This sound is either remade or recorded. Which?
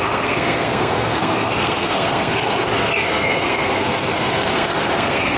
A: remade